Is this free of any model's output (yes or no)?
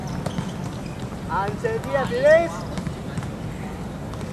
yes